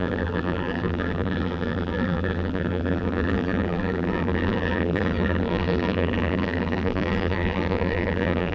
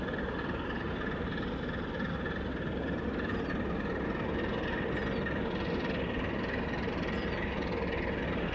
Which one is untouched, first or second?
second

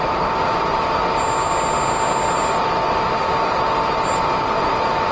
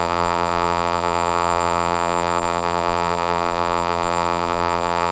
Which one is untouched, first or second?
first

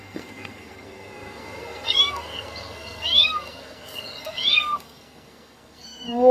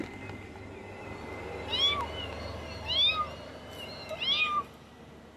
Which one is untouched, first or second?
second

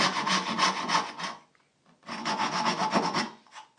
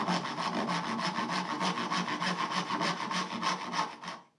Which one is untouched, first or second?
second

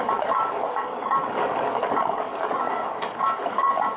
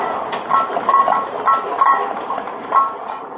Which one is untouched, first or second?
second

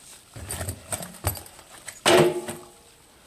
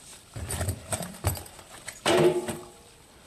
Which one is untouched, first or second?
first